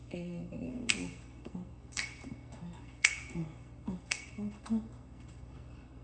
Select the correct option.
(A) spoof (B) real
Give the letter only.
A